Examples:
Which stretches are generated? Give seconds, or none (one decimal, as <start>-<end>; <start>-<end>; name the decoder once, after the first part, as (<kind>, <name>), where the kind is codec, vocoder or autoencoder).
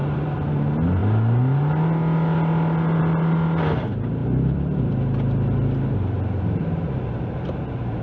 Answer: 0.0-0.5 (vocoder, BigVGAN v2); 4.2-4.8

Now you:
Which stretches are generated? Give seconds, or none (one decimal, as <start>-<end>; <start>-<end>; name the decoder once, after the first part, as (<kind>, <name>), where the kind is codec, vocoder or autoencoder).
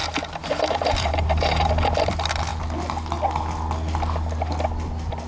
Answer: 0.0-1.7 (vocoder, BigVGAN v2)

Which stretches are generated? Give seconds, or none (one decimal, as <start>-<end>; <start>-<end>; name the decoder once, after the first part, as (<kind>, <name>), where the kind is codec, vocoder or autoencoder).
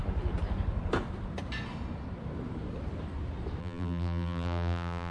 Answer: 3.6-5.1 (vocoder, BigVGAN v2)